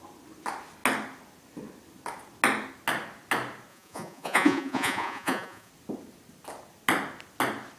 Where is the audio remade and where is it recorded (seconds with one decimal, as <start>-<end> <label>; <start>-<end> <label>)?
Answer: 0.0-3.7 recorded; 3.7-5.7 remade; 5.7-7.8 recorded

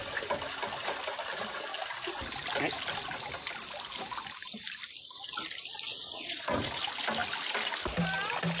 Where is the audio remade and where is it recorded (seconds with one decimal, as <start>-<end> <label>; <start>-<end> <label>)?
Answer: 0.0-5.9 recorded; 5.9-6.8 remade; 6.8-8.6 recorded

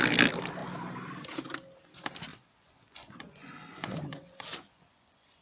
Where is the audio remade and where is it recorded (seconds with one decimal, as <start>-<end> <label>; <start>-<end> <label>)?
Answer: 0.0-2.3 recorded; 2.3-5.4 remade

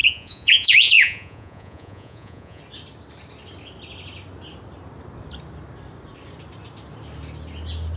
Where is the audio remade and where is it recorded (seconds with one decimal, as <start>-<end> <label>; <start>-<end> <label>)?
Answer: 0.0-2.6 remade; 2.6-8.0 recorded

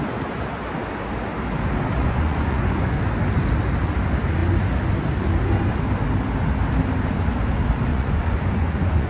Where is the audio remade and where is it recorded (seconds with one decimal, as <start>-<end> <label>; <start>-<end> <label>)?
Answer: 0.0-2.0 recorded; 2.0-3.0 remade; 3.0-7.9 recorded; 7.9-9.1 remade

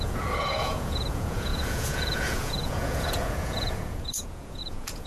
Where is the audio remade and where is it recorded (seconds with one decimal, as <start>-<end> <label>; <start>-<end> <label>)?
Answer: 0.0-5.1 remade

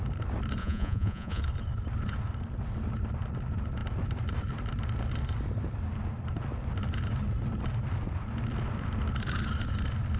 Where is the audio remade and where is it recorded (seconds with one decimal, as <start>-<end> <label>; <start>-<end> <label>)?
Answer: 0.0-0.6 recorded; 0.6-1.4 remade; 1.4-10.2 recorded